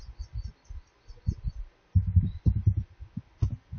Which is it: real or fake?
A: real